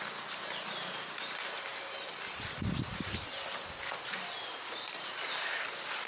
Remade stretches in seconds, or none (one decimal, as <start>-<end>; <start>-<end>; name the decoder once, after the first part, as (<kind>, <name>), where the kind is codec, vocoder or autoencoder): none